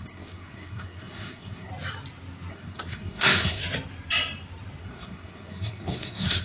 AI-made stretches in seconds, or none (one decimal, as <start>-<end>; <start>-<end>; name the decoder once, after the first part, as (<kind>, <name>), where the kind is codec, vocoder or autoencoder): 0.0-1.7 (codec, SNAC); 2.5-3.6; 4.8-6.4